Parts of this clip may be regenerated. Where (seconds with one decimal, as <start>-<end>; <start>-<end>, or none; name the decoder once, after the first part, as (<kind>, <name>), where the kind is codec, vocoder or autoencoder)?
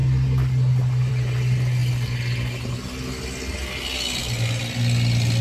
none